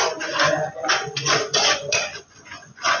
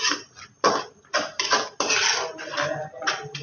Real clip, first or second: second